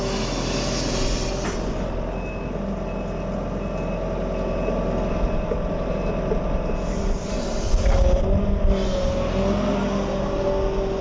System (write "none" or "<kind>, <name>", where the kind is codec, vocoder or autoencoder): none